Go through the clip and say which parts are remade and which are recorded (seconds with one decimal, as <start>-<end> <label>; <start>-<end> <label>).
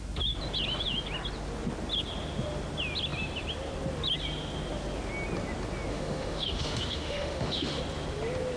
0.0-5.9 recorded; 5.9-7.8 remade; 7.8-8.6 recorded